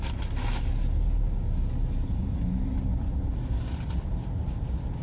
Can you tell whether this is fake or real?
real